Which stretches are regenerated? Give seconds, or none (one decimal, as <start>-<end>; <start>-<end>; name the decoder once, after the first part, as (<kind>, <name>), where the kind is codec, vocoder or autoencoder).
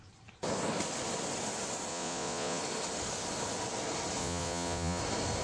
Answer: 1.9-2.6 (vocoder, Vocos); 4.2-5.0